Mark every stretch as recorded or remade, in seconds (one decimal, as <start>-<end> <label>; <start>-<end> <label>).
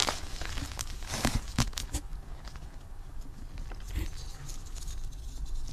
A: 0.0-3.4 remade; 3.4-4.3 recorded; 4.3-4.9 remade; 4.9-5.7 recorded